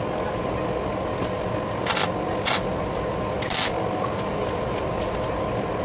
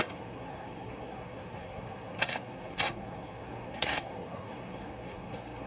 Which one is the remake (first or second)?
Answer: second